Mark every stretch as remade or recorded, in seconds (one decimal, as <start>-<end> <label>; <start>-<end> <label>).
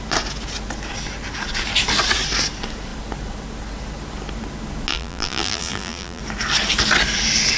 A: 0.0-4.9 recorded; 4.9-6.2 remade; 6.2-7.6 recorded